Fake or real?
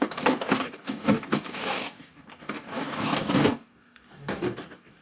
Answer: fake